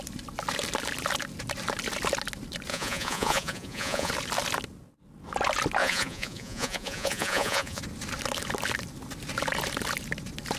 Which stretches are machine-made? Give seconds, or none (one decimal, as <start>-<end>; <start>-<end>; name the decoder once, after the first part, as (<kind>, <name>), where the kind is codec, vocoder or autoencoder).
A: 2.7-4.1 (vocoder, Vocos); 5.8-7.8